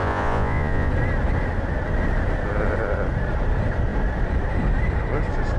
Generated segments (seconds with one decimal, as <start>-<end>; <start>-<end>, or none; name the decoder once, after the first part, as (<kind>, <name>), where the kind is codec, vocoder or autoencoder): 0.0-0.9 (vocoder, Vocos)